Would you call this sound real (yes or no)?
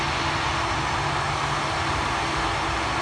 yes